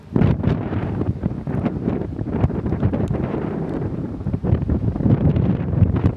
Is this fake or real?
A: fake